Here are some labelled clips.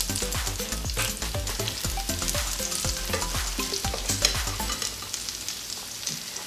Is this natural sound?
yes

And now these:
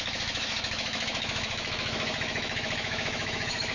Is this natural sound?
no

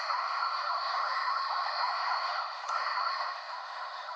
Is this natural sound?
no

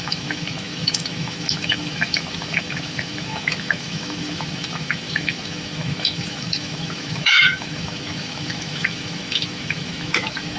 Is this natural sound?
no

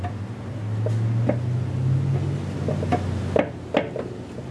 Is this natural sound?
yes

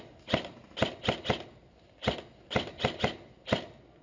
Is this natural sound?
yes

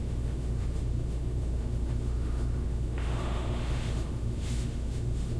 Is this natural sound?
no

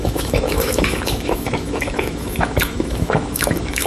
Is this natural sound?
no